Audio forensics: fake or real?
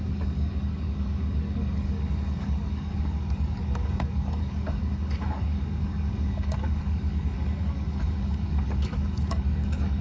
fake